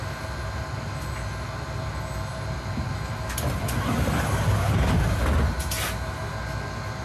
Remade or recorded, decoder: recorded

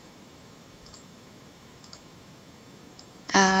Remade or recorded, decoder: remade, autoencoder, DAC-VAE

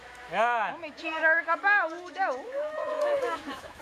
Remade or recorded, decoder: remade, autoencoder, DAC-VAE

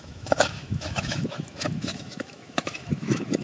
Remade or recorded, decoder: remade, autoencoder, DAC-VAE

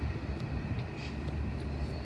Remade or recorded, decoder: recorded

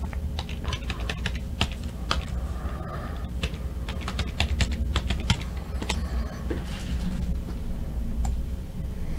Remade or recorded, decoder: recorded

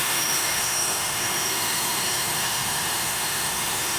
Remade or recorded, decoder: remade, autoencoder, DAC-VAE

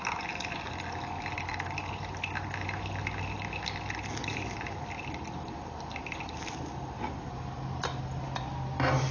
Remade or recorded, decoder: recorded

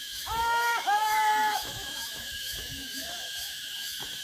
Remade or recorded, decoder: remade, autoencoder, DAC-VAE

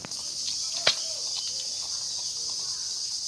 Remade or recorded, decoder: recorded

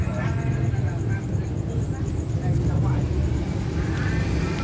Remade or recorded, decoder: recorded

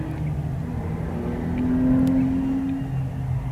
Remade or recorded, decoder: recorded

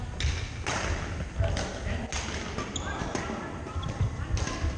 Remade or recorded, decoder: recorded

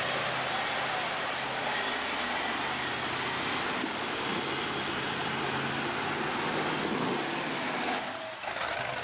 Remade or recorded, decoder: recorded